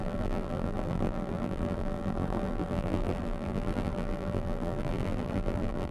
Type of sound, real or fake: fake